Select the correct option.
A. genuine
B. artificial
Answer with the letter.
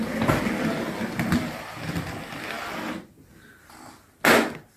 A